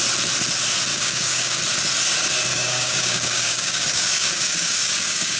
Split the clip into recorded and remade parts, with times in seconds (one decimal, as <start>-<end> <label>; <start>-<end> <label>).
0.0-0.9 recorded; 0.9-1.6 remade; 1.6-2.5 recorded; 2.5-5.4 remade